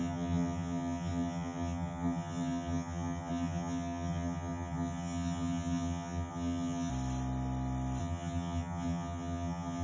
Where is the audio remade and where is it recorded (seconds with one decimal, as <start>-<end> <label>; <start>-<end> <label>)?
0.0-6.9 remade; 6.9-8.0 recorded; 8.0-9.8 remade